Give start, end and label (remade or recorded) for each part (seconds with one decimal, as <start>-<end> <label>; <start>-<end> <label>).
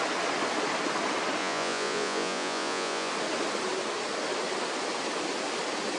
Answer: 0.0-1.4 recorded; 1.4-3.1 remade; 3.1-6.0 recorded